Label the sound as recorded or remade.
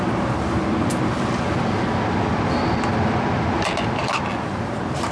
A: recorded